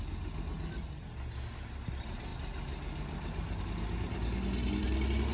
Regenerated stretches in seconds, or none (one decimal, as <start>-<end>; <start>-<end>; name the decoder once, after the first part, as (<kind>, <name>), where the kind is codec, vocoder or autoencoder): none